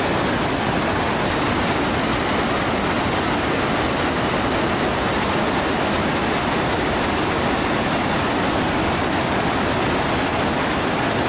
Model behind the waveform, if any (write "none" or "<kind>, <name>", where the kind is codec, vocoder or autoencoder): none